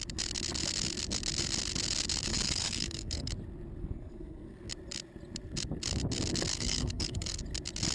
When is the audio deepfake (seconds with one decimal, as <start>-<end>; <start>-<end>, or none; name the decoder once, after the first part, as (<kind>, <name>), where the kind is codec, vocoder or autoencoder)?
2.3-3.3 (codec, SNAC); 3.8-4.7; 6.5-7.4